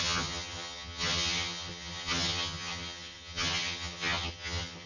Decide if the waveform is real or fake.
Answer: fake